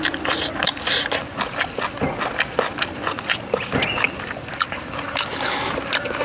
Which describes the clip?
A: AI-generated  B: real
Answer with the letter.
B